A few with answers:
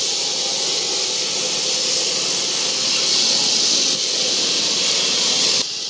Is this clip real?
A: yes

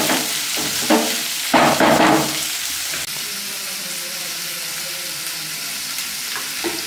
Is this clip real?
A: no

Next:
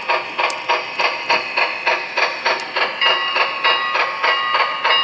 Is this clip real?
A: yes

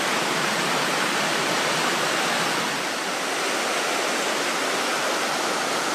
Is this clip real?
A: yes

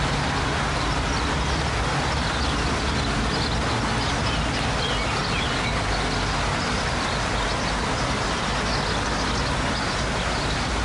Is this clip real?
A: yes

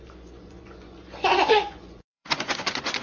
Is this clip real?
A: no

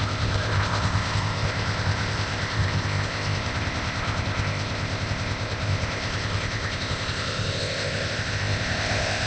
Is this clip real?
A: no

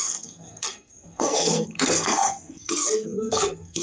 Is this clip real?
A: no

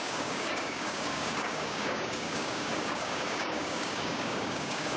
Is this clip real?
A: no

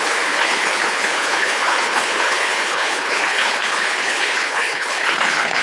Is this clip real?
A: no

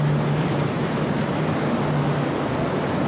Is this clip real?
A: yes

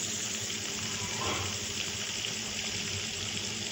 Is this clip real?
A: yes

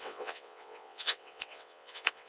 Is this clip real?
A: no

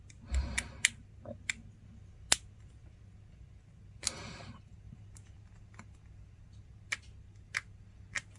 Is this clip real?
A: yes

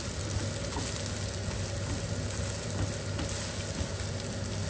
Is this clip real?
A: yes